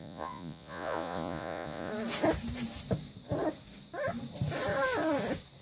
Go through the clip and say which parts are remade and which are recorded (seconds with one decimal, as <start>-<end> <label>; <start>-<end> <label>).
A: 0.0-1.9 remade; 1.9-5.6 recorded